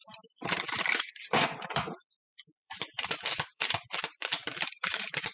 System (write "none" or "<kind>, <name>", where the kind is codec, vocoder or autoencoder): vocoder, BigVGAN v2